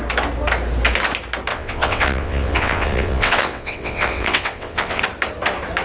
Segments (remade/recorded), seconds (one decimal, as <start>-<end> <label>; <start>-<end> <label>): 0.0-1.5 recorded; 1.5-5.0 remade; 5.0-5.8 recorded